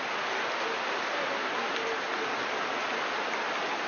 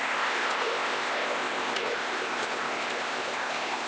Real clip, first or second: first